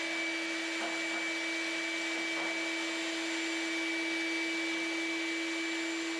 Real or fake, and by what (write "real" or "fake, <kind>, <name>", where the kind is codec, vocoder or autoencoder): real